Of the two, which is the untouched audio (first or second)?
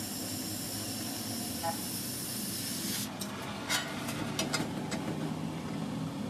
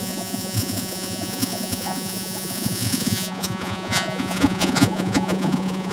first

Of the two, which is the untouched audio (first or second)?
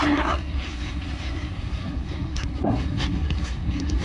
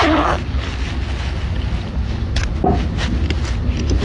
second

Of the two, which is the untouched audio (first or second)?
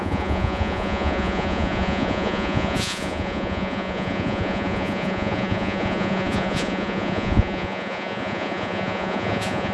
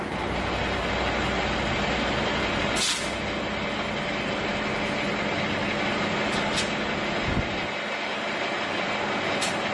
second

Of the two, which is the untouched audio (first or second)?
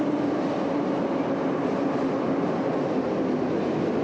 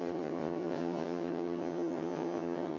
first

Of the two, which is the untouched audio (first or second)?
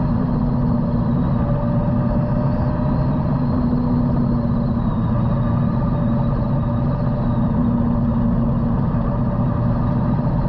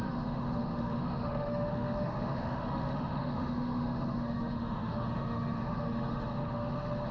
first